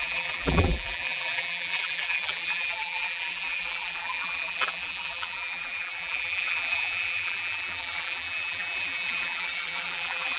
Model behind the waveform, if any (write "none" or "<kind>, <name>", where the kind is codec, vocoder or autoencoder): vocoder, BigVGAN v2